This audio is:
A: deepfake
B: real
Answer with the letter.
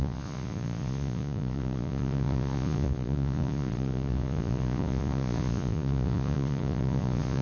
A